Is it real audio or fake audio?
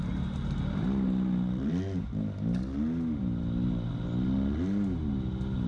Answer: real